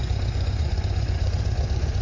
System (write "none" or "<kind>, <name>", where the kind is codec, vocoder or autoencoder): vocoder, Vocos